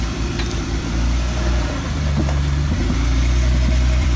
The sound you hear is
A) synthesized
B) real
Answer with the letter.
A